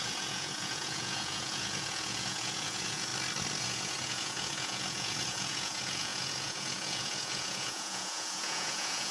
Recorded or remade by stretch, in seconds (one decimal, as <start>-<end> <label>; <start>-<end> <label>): 0.0-3.1 remade; 3.1-3.6 recorded; 3.6-9.1 remade